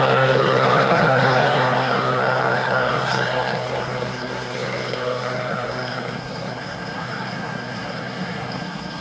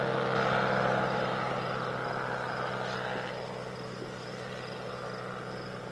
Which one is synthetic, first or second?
first